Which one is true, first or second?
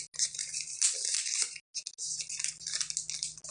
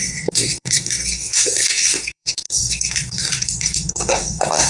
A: first